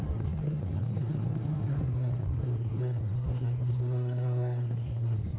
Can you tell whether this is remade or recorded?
remade